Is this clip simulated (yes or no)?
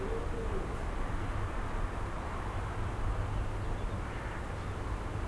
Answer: no